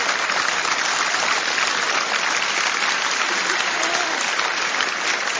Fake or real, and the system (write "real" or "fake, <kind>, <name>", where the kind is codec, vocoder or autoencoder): real